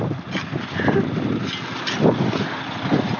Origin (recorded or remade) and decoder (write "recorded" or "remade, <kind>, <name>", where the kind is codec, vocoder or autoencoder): recorded